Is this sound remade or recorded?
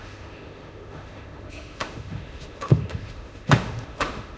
remade